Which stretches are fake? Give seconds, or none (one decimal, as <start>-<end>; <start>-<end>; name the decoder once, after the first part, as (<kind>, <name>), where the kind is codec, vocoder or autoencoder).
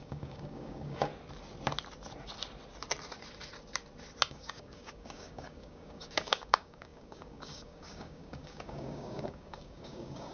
0.0-1.1 (codec, DAC); 4.3-10.3